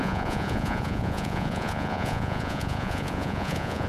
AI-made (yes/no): yes